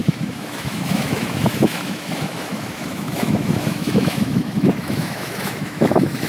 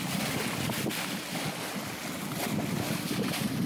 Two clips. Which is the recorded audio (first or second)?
second